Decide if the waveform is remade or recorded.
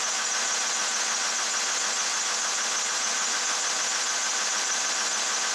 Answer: recorded